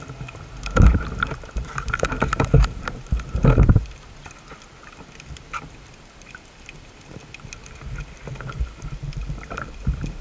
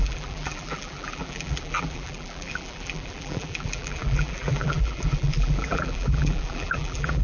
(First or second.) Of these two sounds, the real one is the first